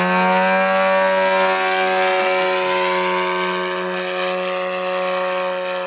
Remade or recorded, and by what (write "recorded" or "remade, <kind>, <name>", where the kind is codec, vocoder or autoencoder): recorded